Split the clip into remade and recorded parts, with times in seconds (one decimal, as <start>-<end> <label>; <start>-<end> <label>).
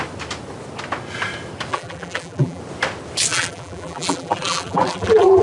0.0-1.7 recorded; 1.7-2.6 remade; 2.6-3.3 recorded; 3.3-5.4 remade